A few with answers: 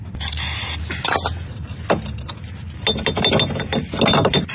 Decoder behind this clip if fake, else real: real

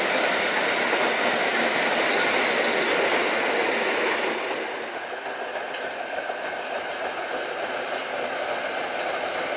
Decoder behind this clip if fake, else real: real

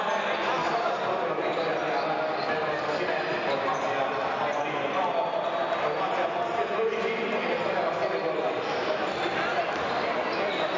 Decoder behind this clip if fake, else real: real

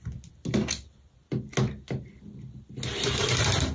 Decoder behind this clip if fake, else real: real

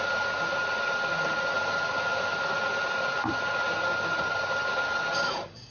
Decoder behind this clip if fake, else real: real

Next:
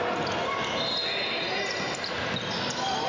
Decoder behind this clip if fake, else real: real